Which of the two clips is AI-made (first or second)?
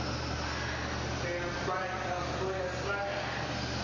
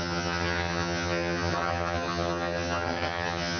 second